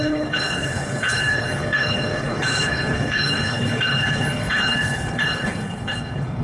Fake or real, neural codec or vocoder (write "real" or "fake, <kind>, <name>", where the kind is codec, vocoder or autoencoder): fake, codec, HILCodec